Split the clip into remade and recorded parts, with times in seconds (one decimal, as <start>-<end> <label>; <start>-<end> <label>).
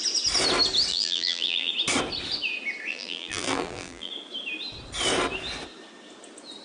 0.0-0.9 recorded; 0.9-1.7 remade; 1.7-2.9 recorded; 2.9-4.1 remade; 4.1-6.6 recorded